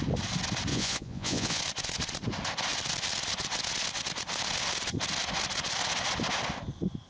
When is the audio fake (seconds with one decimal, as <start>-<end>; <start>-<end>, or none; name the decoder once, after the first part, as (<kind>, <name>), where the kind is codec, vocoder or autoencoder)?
0.7-1.6 (vocoder, Vocos)